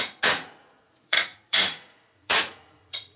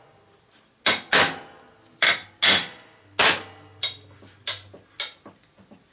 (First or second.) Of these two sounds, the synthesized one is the first